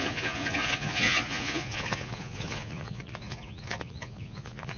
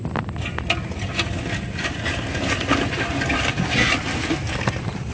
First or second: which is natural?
second